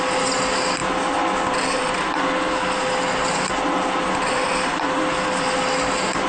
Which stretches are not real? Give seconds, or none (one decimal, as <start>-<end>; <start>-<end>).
none